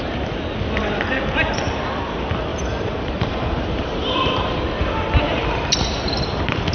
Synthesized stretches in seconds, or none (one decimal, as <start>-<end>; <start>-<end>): 2.5-4.6